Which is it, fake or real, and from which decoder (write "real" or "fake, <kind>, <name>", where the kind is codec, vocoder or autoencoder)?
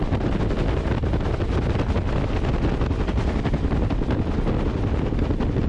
real